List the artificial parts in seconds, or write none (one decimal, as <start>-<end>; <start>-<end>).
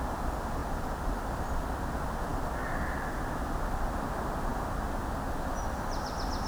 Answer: 0.6-1.8; 4.5-5.4